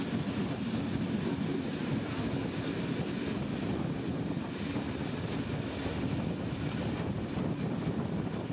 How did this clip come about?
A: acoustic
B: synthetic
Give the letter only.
B